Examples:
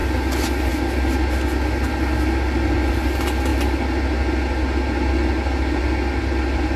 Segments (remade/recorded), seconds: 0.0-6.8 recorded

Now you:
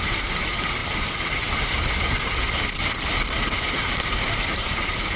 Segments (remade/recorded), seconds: 0.0-0.8 remade; 0.8-3.9 recorded; 3.9-5.2 remade

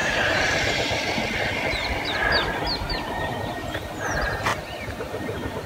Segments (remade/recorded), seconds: 0.0-1.2 remade; 1.2-4.5 recorded; 4.5-5.7 remade

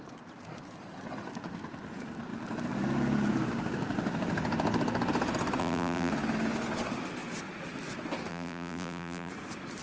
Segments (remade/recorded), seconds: 0.0-5.6 recorded; 5.6-6.1 remade; 6.1-8.3 recorded; 8.3-9.3 remade; 9.3-9.8 recorded

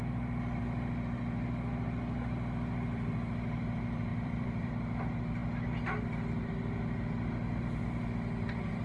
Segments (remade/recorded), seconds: 0.0-0.6 recorded; 0.6-1.2 remade; 1.2-4.1 recorded; 4.1-4.7 remade; 4.7-8.8 recorded

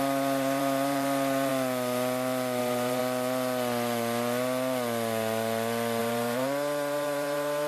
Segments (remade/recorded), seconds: 0.0-1.5 remade; 1.5-2.6 recorded; 2.6-3.0 remade; 3.0-6.0 recorded; 6.0-7.7 remade